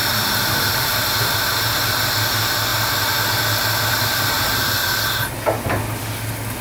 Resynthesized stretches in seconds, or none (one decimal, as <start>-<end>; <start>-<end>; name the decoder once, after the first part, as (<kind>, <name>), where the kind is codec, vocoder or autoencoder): 0.0-1.9 (vocoder, BigVGAN v2); 2.7-4.7